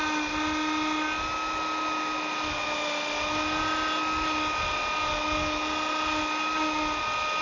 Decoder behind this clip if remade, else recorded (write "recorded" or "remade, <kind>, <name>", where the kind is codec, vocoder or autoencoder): recorded